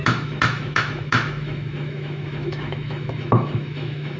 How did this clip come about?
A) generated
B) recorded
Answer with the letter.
A